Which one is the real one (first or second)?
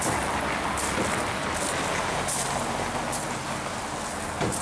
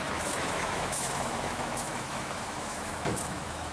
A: first